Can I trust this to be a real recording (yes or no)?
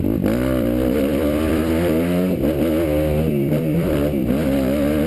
no